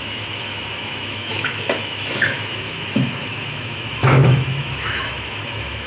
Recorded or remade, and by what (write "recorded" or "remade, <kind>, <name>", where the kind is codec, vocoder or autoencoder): remade, autoencoder, DAC-VAE